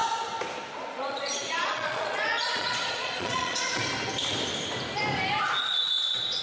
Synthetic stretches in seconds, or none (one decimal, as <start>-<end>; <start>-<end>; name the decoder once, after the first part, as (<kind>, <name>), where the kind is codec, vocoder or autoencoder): 0.9-3.8 (vocoder, Vocos); 5.6-6.4